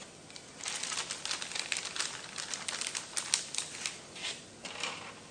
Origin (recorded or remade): recorded